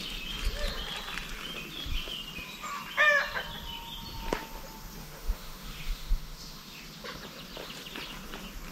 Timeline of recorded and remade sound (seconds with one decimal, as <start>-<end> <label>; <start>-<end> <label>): 0.0-5.0 recorded; 5.0-6.8 remade; 6.8-8.7 recorded